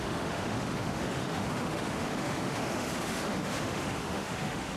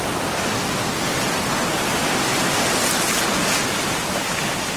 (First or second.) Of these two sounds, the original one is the second